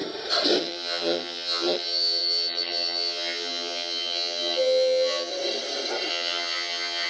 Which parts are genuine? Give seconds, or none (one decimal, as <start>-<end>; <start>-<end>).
0.0-0.6; 5.3-6.1